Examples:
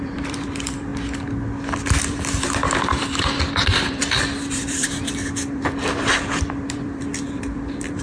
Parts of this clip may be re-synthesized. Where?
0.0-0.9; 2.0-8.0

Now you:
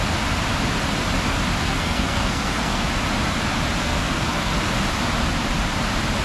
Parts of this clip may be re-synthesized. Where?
1.6-2.9; 3.8-4.7